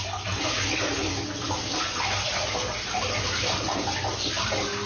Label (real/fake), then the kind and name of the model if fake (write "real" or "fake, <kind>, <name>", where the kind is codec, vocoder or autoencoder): real